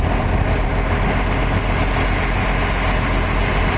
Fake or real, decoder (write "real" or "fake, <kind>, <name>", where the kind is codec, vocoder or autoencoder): real